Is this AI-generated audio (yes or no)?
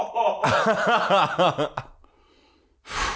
no